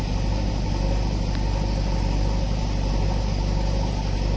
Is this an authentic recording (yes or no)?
yes